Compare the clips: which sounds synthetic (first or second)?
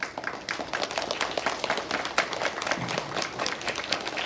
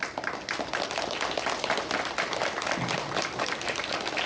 second